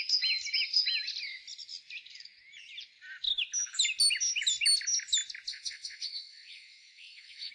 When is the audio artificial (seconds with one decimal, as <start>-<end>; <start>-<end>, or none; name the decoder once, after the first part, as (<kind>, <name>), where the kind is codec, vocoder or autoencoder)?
5.5-7.5 (vocoder, WaveNeXt)